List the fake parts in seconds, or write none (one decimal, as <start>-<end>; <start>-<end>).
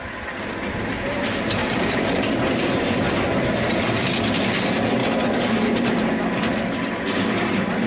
1.6-2.2; 5.0-6.2